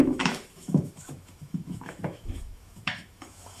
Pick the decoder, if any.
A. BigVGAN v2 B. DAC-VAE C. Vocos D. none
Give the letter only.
B